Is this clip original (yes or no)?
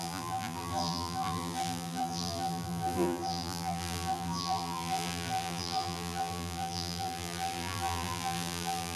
no